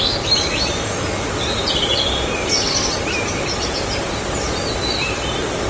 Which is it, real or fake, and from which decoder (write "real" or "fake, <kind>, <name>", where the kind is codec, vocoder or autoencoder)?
real